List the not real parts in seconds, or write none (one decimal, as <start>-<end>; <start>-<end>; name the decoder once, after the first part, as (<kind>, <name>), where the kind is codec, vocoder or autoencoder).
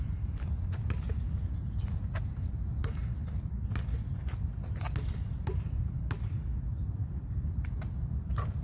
none